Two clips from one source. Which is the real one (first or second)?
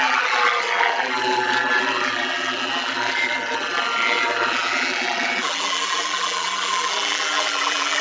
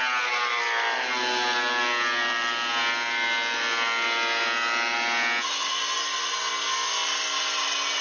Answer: second